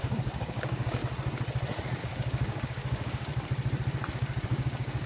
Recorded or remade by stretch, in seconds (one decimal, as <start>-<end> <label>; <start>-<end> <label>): 0.0-1.0 remade; 1.0-2.0 recorded; 2.0-3.3 remade; 3.3-4.1 recorded; 4.1-5.1 remade

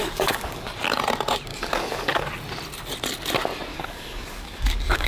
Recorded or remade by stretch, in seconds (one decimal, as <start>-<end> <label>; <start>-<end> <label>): 0.0-0.7 remade; 0.7-1.5 recorded; 1.5-2.3 remade; 2.3-3.7 recorded; 3.7-5.1 remade

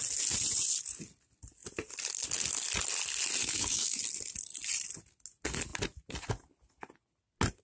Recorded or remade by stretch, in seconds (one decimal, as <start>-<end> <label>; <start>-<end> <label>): 0.0-3.4 recorded; 3.4-4.0 remade; 4.0-7.6 recorded

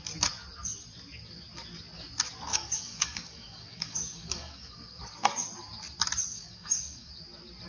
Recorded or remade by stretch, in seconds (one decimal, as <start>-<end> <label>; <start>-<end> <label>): 0.0-2.5 recorded; 2.5-5.0 remade; 5.0-6.3 recorded; 6.3-7.1 remade; 7.1-7.7 recorded

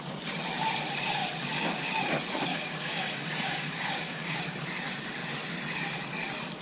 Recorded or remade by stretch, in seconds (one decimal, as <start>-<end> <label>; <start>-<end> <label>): 0.0-2.5 recorded; 2.5-4.4 remade; 4.4-6.6 recorded